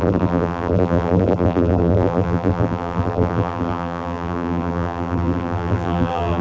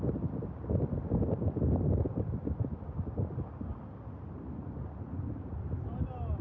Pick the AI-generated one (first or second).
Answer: first